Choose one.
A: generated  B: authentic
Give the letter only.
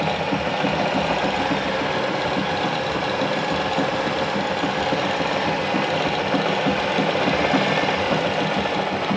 B